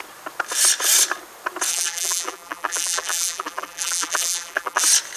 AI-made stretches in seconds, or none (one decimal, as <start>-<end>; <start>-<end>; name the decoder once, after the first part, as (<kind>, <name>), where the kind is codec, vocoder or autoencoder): 1.7-4.8 (vocoder, BigVGAN v2)